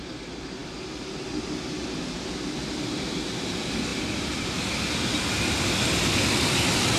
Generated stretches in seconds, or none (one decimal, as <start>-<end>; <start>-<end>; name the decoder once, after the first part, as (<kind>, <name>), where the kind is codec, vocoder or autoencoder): none